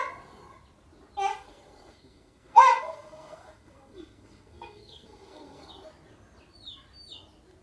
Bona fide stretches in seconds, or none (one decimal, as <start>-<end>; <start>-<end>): 0.0-1.3; 5.7-7.6